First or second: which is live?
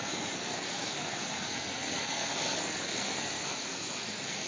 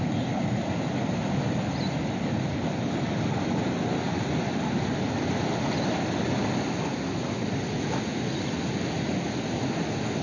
second